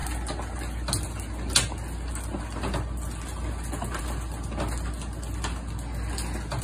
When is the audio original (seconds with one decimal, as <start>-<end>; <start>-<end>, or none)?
0.0-6.6